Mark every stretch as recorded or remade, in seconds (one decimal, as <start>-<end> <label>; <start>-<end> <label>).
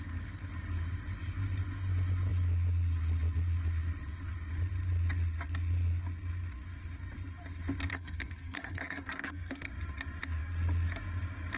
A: 0.0-7.9 recorded; 7.9-9.7 remade; 9.7-11.6 recorded